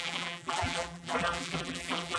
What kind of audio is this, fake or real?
fake